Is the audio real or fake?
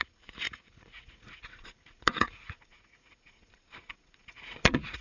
fake